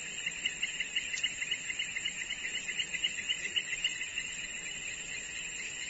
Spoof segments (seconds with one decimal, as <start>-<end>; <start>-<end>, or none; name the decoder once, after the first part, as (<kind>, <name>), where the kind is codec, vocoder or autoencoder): 3.5-4.8 (vocoder, BigVGAN v2)